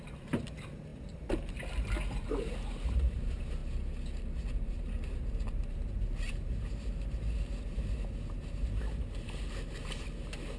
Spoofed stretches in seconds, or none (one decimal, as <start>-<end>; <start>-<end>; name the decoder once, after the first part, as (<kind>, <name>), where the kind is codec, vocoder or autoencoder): 0.0-3.6 (vocoder, BigVGAN v2); 4.5-10.6